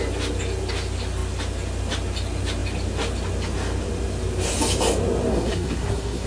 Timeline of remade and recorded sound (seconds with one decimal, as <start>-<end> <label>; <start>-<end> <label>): 0.0-5.3 recorded; 5.3-6.3 remade